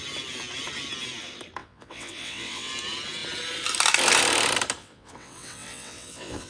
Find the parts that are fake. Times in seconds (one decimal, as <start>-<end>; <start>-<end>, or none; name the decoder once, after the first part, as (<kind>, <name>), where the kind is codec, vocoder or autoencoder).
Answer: 1.6-2.7 (vocoder, WaveNeXt); 4.8-6.5